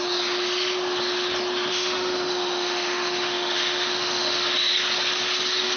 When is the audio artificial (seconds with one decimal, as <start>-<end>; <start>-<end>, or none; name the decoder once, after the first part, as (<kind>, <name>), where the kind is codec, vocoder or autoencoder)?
1.7-4.7 (autoencoder, DAC-VAE)